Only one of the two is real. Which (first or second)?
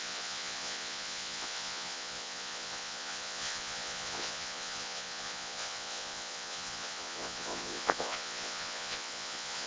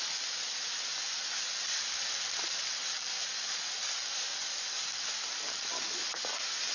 second